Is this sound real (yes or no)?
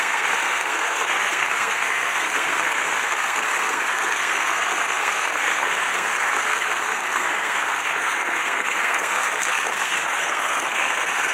no